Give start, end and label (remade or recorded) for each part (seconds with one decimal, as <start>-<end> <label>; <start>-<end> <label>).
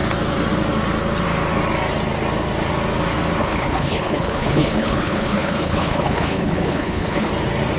0.0-3.4 recorded; 3.4-7.3 remade; 7.3-7.8 recorded